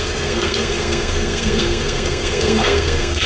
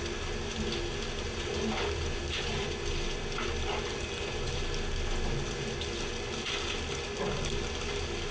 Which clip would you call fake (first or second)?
first